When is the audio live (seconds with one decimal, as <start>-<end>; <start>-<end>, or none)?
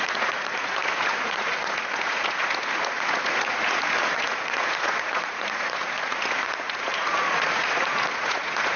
none